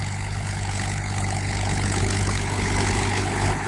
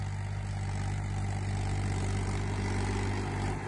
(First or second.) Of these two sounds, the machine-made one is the first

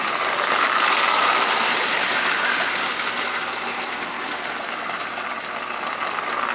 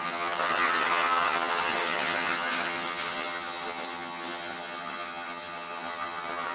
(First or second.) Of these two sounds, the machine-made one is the second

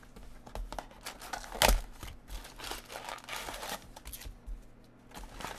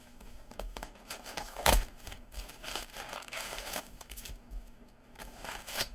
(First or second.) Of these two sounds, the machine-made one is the second